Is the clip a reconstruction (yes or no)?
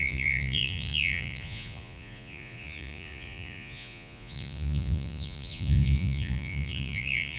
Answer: yes